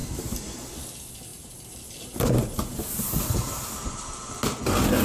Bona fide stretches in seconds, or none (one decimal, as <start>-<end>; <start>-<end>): 0.0-1.3; 4.3-5.0